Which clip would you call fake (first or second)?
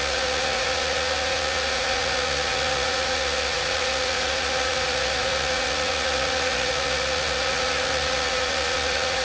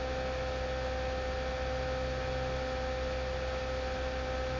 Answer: first